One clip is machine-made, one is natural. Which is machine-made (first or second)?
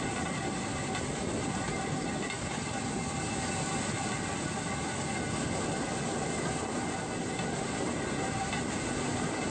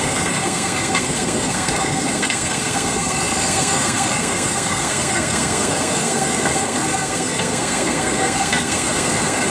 second